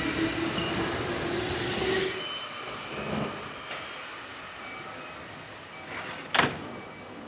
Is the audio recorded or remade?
recorded